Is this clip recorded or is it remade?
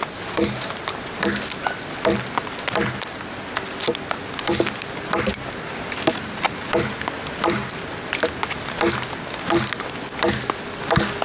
recorded